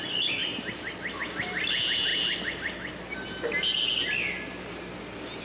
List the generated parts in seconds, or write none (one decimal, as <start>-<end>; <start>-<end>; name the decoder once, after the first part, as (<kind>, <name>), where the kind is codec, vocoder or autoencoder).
none

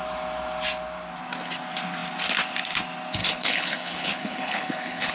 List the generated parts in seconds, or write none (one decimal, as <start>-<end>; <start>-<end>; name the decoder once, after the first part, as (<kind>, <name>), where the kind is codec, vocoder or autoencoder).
3.2-5.1 (codec, HILCodec)